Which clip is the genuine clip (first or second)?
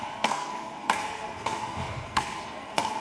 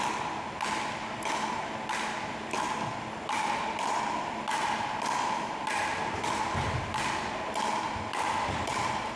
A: second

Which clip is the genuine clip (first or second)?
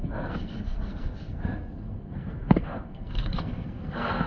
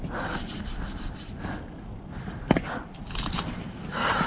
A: second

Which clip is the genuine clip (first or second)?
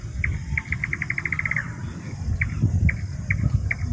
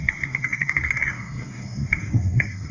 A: first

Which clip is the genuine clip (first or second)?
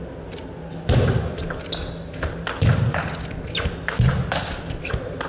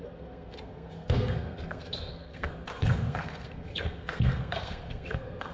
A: first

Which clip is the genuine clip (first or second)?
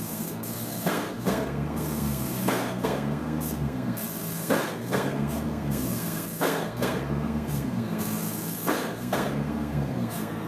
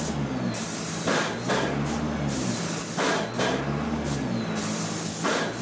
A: second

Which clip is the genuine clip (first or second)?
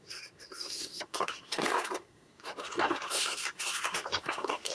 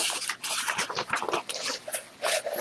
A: second